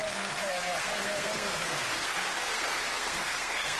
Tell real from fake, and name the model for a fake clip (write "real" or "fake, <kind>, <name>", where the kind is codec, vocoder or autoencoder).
fake, codec, SNAC